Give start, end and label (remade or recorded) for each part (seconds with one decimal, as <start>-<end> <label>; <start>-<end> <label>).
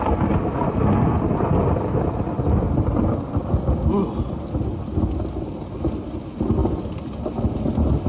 0.0-8.1 recorded